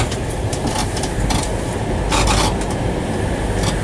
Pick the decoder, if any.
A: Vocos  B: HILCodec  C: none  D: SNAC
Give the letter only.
C